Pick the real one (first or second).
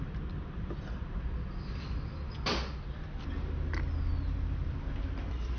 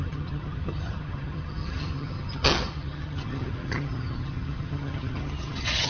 first